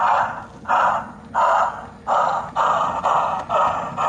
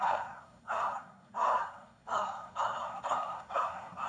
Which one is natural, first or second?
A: first